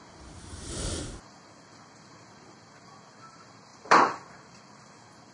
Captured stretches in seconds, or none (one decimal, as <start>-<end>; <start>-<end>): 0.0-5.3